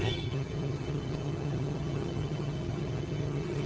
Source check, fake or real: fake